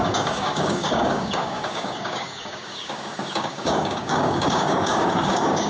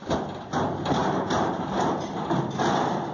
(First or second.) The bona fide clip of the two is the second